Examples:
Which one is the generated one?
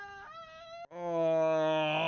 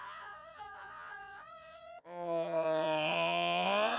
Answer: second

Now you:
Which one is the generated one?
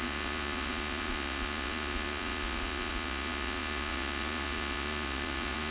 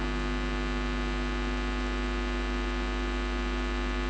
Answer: first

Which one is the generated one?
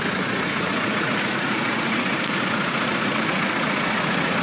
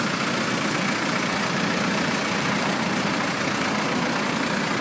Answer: first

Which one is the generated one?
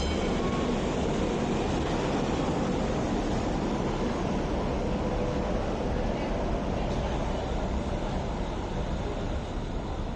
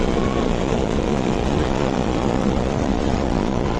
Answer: second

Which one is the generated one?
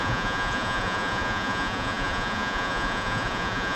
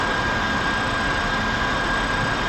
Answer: first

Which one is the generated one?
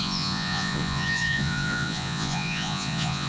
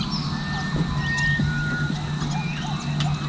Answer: first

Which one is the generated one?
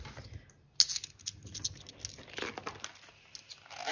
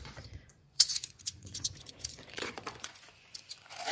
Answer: second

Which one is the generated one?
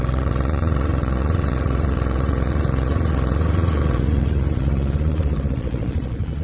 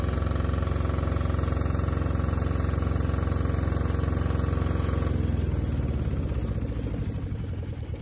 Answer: first